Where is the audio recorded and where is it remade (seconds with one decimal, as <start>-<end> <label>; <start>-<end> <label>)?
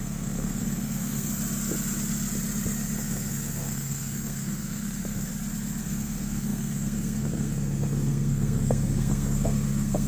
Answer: 0.0-1.3 remade; 1.3-3.0 recorded; 3.0-5.3 remade; 5.3-5.8 recorded; 5.8-10.1 remade